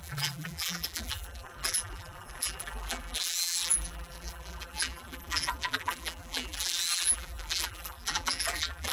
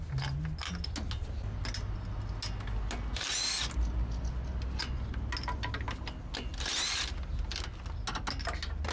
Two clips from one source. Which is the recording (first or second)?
second